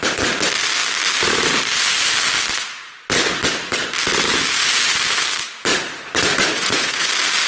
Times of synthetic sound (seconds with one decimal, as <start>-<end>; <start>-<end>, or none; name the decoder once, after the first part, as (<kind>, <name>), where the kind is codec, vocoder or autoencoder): 5.7-7.1 (vocoder, Vocos)